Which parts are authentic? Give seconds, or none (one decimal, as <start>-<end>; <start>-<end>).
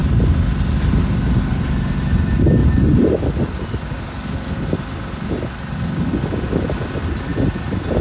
0.0-8.0